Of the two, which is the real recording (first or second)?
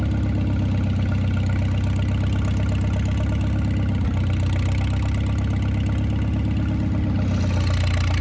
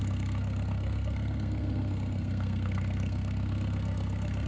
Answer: first